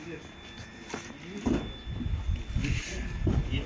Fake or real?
real